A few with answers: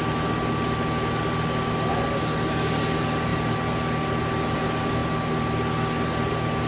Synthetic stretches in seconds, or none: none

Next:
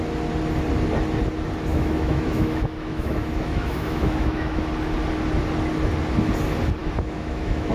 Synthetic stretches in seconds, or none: 1.7-4.7 (autoencoder, DAC-VAE); 6.8-7.7